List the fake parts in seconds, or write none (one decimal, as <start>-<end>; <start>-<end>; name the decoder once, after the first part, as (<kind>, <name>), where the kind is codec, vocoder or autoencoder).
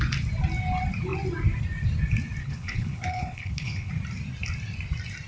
2.4-3.9 (codec, HILCodec)